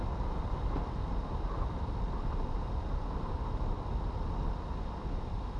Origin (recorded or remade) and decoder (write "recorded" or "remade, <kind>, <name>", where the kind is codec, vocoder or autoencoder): recorded